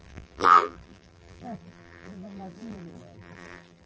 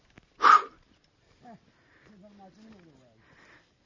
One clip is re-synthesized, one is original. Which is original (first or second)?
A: second